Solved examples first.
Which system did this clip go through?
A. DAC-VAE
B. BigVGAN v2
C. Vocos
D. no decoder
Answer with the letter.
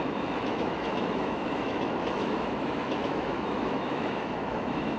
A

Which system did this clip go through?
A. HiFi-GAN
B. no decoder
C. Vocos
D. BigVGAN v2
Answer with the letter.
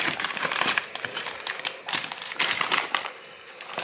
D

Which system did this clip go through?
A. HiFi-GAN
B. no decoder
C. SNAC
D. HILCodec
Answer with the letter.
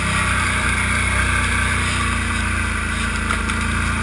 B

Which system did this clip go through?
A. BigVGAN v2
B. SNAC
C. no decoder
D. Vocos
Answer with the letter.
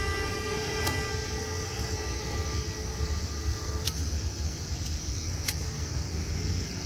B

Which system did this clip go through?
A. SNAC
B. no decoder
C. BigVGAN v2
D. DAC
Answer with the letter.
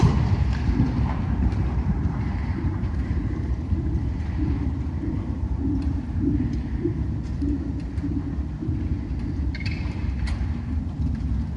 C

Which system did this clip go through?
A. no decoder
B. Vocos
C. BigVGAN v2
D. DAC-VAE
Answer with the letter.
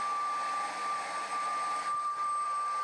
C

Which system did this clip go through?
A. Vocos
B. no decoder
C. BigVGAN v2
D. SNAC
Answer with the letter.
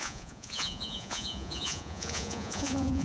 A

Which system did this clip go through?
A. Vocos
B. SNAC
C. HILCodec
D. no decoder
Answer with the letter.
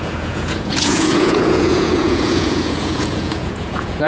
A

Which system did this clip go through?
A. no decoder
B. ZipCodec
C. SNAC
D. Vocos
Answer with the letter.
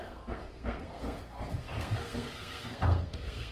C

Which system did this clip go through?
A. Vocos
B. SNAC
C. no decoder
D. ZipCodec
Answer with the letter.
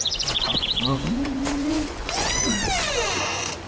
A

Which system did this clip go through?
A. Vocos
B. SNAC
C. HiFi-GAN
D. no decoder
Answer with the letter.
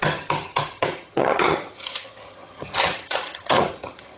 C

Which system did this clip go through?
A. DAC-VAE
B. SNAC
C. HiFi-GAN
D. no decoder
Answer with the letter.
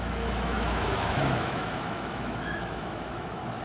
A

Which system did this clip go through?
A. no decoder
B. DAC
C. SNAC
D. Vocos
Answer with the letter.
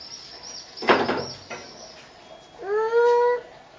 A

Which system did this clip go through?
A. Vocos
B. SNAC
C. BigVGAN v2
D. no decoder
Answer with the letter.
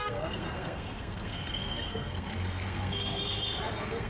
B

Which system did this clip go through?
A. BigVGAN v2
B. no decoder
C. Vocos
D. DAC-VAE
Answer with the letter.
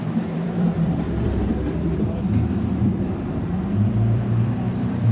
A